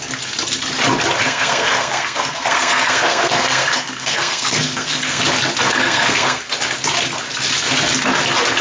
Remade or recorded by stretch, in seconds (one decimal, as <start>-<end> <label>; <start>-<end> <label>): 0.0-1.2 recorded; 1.2-5.2 remade; 5.2-5.8 recorded; 5.8-6.4 remade; 6.4-8.6 recorded